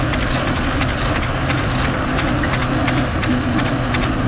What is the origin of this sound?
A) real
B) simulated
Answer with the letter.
A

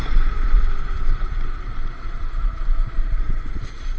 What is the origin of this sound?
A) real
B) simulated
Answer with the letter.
B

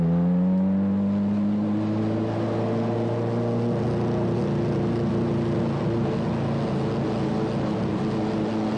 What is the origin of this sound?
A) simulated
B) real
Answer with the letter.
B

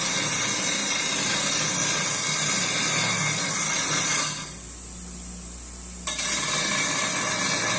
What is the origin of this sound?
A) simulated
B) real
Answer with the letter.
B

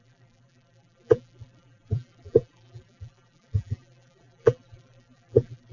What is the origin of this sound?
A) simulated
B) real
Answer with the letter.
A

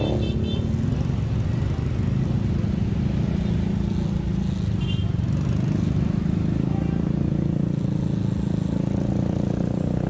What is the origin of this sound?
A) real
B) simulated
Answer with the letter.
A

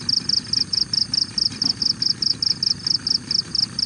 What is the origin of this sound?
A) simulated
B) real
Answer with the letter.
B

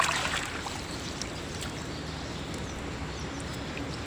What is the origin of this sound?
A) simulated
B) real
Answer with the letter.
A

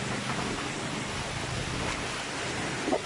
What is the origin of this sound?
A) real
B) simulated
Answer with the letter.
A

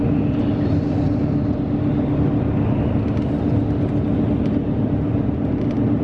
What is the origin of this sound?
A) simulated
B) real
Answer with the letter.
B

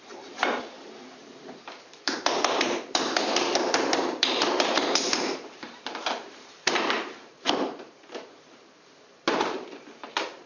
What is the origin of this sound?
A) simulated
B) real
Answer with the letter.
A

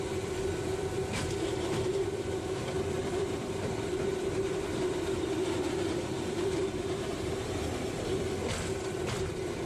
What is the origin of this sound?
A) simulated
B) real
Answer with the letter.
A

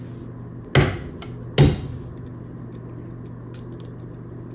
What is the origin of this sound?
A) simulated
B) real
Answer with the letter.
B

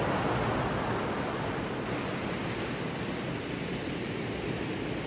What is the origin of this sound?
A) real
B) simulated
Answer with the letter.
A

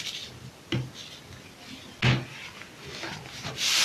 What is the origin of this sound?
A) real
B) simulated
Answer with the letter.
A